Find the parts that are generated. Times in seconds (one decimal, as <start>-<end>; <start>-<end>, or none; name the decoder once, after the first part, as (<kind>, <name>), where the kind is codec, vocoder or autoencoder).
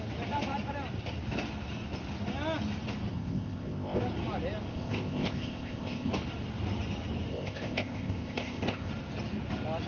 3.1-4.0 (codec, ZipCodec); 4.7-6.1; 7.3-8.9